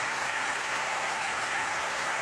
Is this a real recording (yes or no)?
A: no